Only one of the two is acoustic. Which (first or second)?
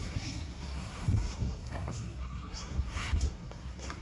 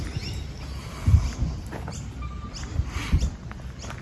second